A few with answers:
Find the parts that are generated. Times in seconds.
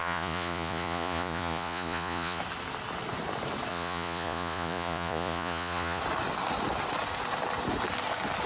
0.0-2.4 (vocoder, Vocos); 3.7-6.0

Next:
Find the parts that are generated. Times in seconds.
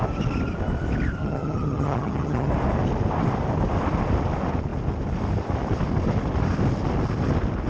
1.2-2.5 (vocoder, HiFi-GAN)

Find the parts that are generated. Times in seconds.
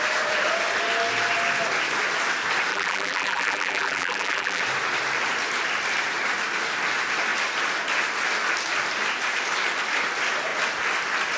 2.7-4.6 (vocoder, BigVGAN v2)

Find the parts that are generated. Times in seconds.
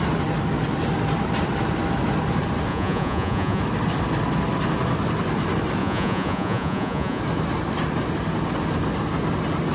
2.7-3.6 (vocoder, Vocos); 5.8-7.2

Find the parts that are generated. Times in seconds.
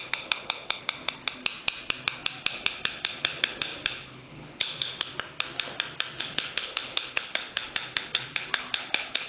0.0-0.8 (codec, HILCodec); 2.5-5.1; 6.2-9.3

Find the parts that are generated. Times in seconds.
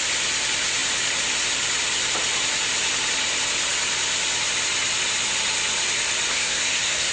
6.3-7.1 (codec, SNAC)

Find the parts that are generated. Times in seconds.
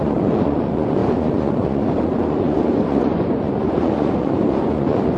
0.0-5.2 (vocoder, Vocos)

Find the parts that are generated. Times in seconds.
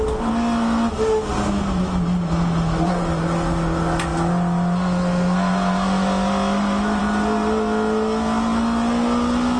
none